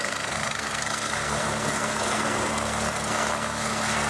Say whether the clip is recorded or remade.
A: remade